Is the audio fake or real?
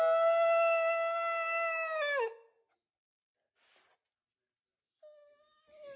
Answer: real